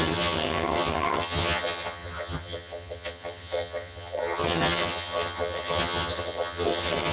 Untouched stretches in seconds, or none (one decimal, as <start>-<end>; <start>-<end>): none